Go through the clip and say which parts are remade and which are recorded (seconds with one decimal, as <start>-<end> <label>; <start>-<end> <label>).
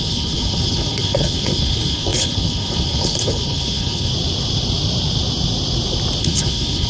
0.0-4.1 remade; 4.1-6.2 recorded; 6.2-6.9 remade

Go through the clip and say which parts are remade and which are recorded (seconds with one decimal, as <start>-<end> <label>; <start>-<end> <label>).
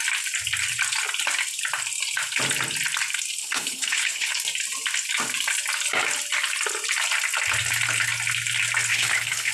0.0-3.4 recorded; 3.4-4.3 remade; 4.3-8.9 recorded; 8.9-9.5 remade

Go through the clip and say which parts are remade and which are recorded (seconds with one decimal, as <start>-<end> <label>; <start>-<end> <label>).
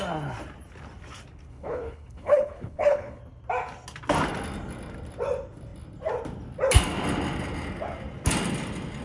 0.0-1.5 recorded; 1.5-3.2 remade; 3.2-9.0 recorded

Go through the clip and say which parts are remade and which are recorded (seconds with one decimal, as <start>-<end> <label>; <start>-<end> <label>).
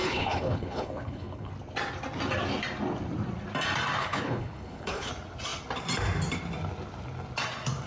0.0-1.5 remade; 1.5-4.0 recorded; 4.0-5.1 remade; 5.1-7.9 recorded